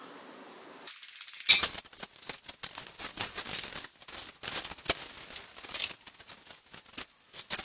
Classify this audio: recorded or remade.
recorded